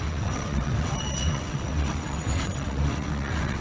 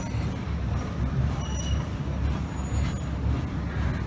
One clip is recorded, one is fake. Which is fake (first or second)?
first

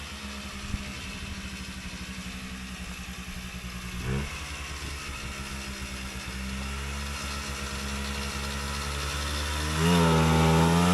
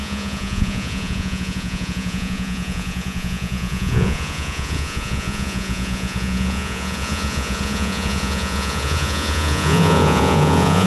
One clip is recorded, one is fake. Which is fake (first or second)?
second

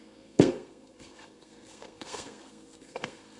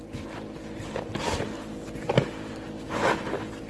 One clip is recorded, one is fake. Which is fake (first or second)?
first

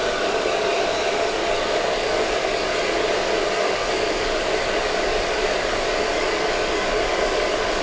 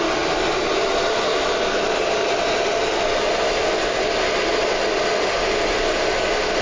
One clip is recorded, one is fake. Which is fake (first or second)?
first